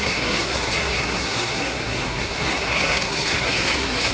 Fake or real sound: fake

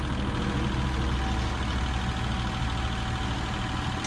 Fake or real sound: real